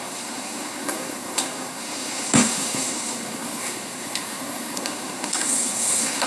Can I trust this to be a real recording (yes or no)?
no